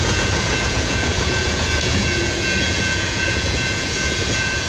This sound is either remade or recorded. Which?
remade